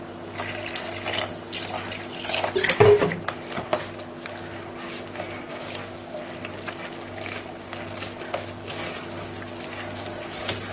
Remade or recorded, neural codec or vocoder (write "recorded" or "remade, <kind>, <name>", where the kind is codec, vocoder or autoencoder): recorded